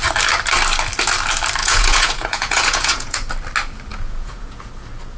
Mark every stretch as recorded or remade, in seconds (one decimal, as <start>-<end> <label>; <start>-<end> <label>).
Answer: 0.0-1.6 recorded; 1.6-3.3 remade; 3.3-3.9 recorded; 3.9-4.7 remade; 4.7-5.2 recorded

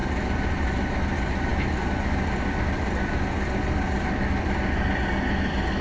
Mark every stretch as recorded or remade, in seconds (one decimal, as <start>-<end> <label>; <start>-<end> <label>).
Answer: 0.0-5.8 recorded

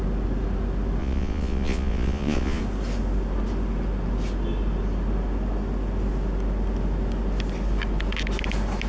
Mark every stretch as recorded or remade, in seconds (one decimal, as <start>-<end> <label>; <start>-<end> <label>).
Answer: 0.0-1.0 recorded; 1.0-2.6 remade; 2.6-8.9 recorded

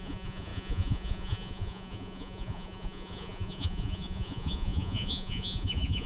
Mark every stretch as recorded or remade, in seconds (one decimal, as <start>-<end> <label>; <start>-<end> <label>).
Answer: 0.0-6.1 remade

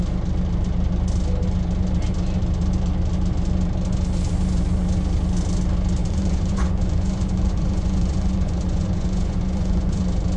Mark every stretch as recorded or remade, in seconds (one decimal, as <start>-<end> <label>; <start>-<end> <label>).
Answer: 0.0-6.0 recorded; 6.0-10.0 remade; 10.0-10.4 recorded

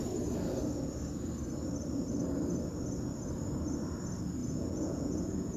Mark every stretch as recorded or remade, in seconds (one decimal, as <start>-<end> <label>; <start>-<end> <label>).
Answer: 0.0-4.4 recorded; 4.4-5.6 remade